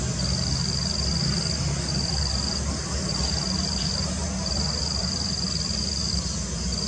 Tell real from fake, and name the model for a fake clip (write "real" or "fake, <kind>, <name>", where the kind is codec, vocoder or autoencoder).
real